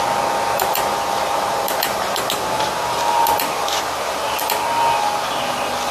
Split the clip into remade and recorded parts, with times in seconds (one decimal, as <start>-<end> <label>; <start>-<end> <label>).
0.0-0.9 recorded; 0.9-4.4 remade; 4.4-5.9 recorded